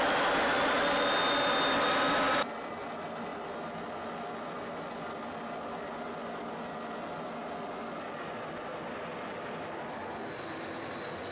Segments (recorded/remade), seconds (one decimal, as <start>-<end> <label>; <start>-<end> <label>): 0.0-11.3 recorded